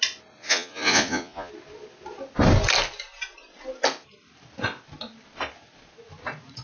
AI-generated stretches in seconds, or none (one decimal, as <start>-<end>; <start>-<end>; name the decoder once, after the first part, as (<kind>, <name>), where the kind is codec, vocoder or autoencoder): 0.4-1.5 (vocoder, Vocos)